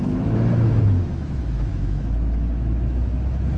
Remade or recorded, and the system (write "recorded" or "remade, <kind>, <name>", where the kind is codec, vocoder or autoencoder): remade, autoencoder, DAC-VAE